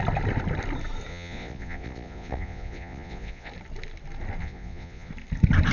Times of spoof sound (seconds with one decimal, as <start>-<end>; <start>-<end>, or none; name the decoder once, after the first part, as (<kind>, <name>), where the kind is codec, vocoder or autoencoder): 1.1-3.5 (vocoder, Vocos); 4.4-5.1